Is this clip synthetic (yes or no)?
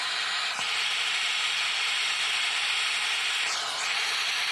no